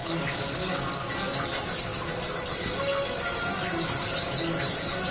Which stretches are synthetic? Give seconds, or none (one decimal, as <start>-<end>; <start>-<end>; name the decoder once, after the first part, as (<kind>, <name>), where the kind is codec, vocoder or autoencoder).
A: 0.0-1.4 (codec, DAC)